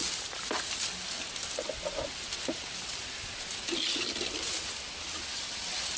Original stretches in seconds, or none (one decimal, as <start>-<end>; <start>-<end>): 0.0-6.0